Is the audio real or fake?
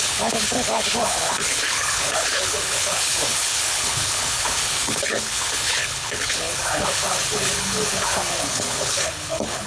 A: fake